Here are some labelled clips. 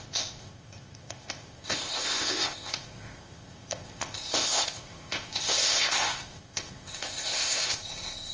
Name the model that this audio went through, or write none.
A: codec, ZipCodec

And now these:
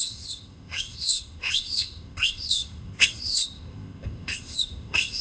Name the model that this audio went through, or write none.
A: codec, ZipCodec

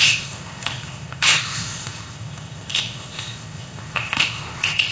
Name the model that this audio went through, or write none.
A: codec, ZipCodec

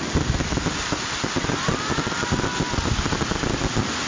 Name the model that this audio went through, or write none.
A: none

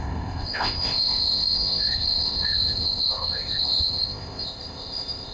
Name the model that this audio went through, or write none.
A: codec, ZipCodec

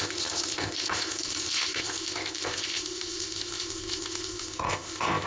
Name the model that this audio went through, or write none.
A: codec, ZipCodec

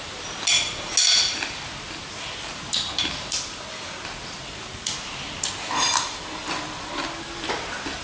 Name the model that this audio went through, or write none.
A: none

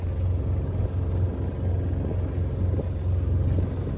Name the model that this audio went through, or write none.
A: none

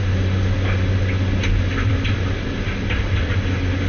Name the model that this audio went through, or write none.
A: none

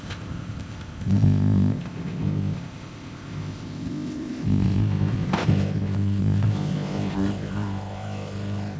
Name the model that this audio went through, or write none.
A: codec, ZipCodec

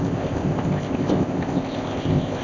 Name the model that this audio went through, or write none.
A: codec, ZipCodec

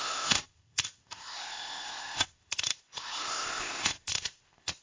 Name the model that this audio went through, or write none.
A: codec, ZipCodec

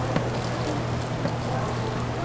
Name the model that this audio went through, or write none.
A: none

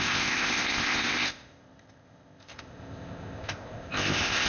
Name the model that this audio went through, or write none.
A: codec, ZipCodec